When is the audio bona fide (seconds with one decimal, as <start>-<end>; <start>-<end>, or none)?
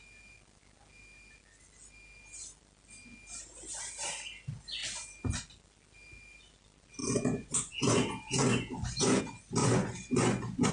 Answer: 0.0-7.0; 9.2-9.6